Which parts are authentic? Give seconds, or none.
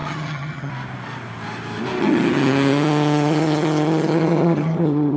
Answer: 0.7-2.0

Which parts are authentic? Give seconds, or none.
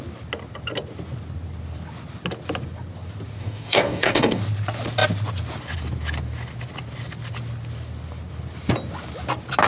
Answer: 0.0-3.4; 4.4-9.7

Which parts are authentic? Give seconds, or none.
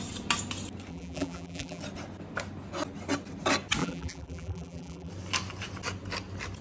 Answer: 0.0-0.9; 1.8-3.8; 5.1-6.6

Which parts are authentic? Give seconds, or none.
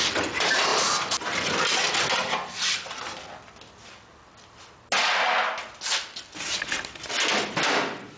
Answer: 0.0-8.2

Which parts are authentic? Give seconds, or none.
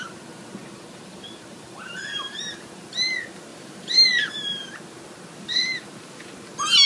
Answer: 0.0-0.6; 2.4-3.5; 4.3-6.9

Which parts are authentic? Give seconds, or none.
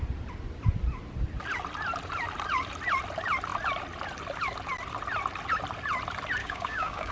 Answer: 0.0-6.4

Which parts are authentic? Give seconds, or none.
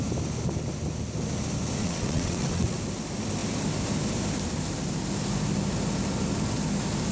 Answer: 0.0-1.8; 2.8-7.1